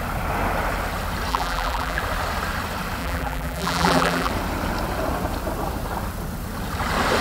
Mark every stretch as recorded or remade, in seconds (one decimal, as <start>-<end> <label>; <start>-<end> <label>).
0.0-1.3 recorded; 1.3-2.0 remade; 2.0-3.0 recorded; 3.0-4.3 remade; 4.3-7.2 recorded